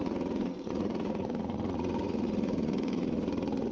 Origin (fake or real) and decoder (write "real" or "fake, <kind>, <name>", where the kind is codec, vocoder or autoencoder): fake, vocoder, Vocos